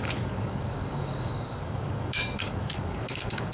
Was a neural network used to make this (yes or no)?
yes